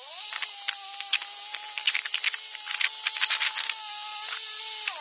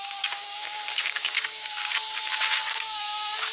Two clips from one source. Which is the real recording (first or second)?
first